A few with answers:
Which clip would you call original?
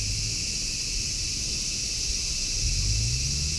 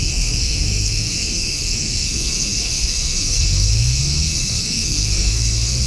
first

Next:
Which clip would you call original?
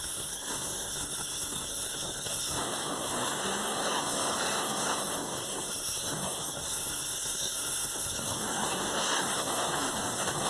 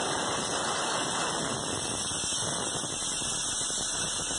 second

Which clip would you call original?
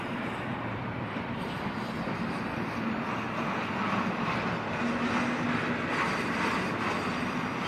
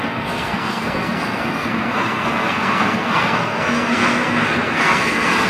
first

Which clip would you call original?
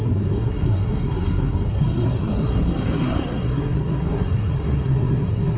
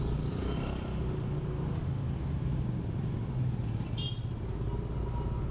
second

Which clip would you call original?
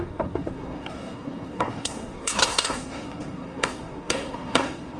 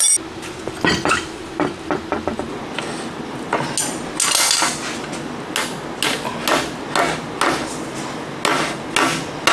second